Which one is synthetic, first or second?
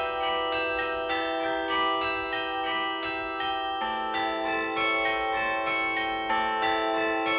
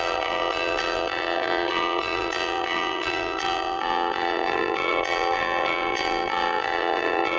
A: second